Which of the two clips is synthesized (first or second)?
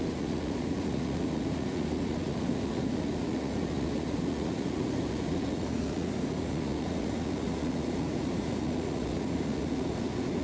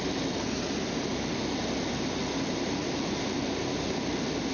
first